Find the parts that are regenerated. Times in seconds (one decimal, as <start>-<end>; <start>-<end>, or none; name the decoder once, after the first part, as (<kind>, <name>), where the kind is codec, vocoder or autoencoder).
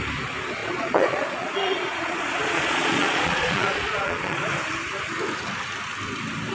0.6-4.5 (vocoder, Vocos)